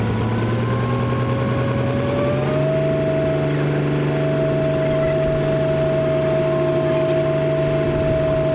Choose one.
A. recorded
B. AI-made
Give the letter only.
A